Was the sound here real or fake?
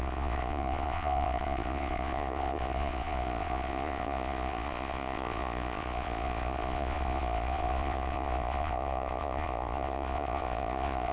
fake